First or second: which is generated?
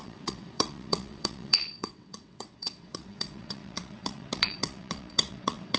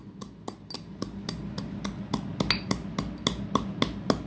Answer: first